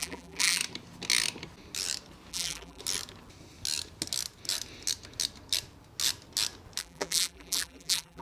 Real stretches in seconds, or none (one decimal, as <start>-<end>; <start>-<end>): 0.6-2.3; 2.8-6.8